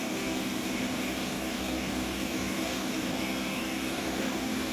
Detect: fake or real fake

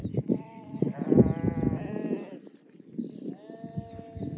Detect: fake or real real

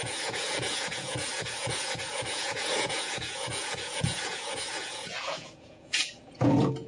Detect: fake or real fake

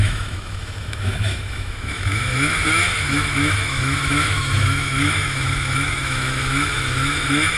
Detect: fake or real fake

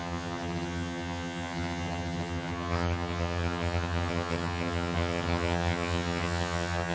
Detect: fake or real fake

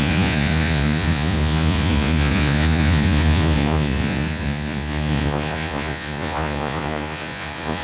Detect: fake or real fake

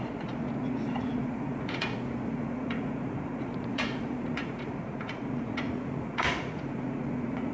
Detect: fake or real fake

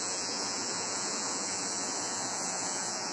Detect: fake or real fake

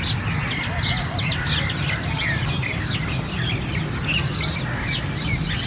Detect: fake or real real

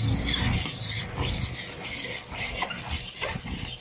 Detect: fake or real real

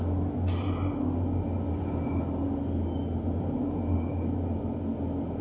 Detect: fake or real real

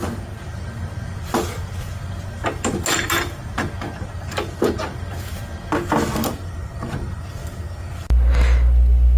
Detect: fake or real real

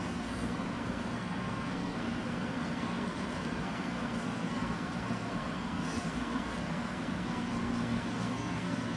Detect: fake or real fake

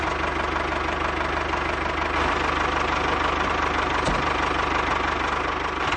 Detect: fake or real real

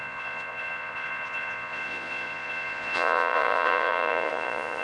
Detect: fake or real fake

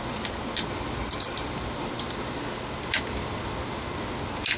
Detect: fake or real real